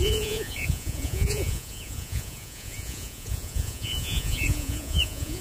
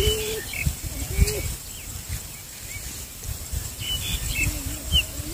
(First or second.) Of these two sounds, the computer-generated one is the first